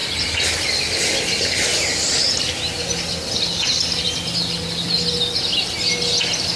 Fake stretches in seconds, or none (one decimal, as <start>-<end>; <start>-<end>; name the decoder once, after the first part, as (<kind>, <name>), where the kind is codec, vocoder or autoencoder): none